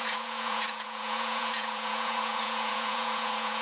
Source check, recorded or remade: remade